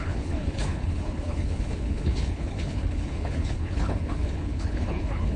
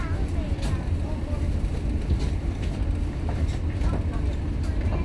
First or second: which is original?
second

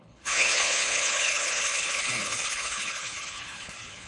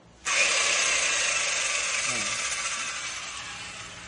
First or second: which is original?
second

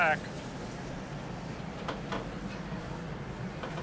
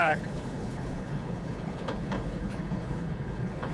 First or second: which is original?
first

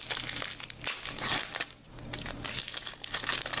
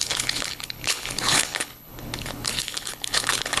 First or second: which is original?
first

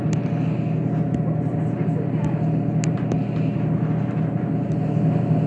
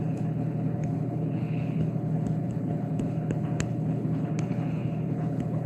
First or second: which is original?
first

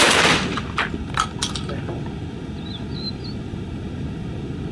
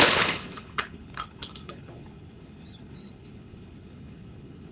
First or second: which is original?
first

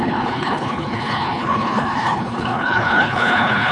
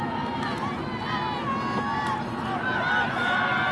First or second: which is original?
second